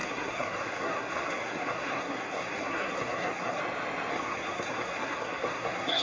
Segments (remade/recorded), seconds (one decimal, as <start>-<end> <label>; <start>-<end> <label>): 0.0-3.6 remade; 3.6-4.1 recorded; 4.1-6.0 remade